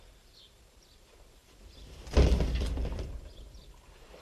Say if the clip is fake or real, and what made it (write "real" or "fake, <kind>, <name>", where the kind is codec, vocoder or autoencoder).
real